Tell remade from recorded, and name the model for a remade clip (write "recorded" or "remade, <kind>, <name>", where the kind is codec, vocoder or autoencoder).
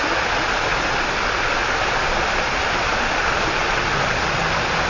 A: recorded